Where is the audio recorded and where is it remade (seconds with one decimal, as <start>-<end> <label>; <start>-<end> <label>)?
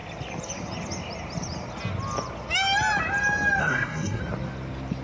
0.0-3.6 recorded; 3.6-4.2 remade; 4.2-5.0 recorded